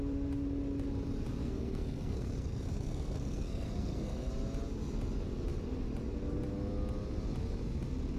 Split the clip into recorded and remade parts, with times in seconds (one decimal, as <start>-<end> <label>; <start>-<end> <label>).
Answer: 0.0-1.4 recorded; 1.4-4.3 remade; 4.3-8.2 recorded